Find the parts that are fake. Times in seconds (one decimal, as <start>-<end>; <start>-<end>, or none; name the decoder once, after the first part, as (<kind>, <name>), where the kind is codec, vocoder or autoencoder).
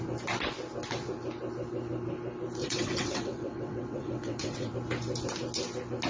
2.6-4.7 (vocoder, WaveNeXt)